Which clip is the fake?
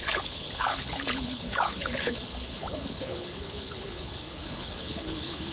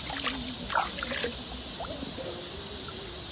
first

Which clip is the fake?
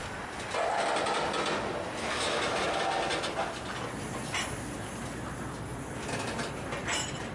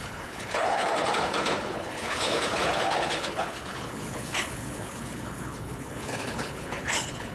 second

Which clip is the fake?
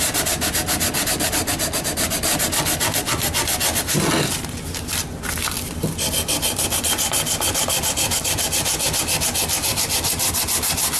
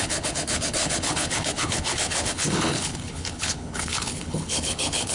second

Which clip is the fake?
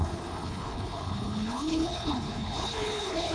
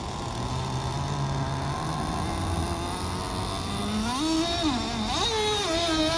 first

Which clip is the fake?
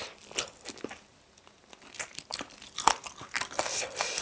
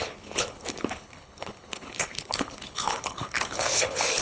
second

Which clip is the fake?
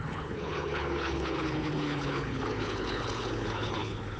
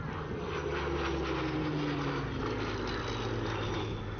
first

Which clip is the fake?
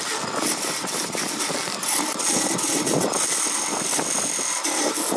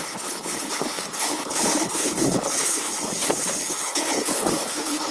second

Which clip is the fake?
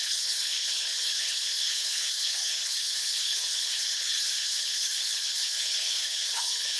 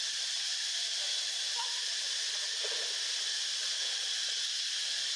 first